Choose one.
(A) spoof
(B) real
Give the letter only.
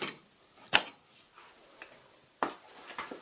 B